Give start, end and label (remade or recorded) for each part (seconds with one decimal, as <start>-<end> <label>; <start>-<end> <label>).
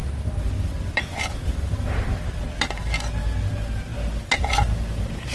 0.0-5.3 recorded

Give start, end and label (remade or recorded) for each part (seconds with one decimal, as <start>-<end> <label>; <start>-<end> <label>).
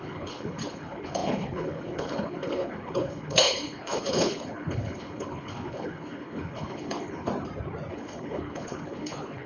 0.0-7.3 remade; 7.3-7.9 recorded; 7.9-9.5 remade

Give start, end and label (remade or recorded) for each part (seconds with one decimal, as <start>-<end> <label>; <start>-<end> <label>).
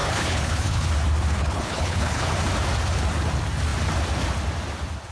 0.0-0.9 remade; 0.9-1.4 recorded; 1.4-2.3 remade; 2.3-5.1 recorded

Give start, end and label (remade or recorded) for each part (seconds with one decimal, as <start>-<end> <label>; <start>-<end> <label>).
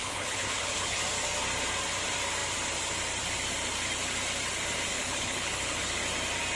0.0-1.0 remade; 1.0-4.9 recorded; 4.9-6.0 remade; 6.0-6.6 recorded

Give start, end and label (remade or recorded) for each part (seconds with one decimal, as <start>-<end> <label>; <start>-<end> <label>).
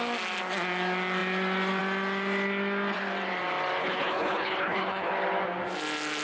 0.0-3.8 recorded; 3.8-5.1 remade; 5.1-6.2 recorded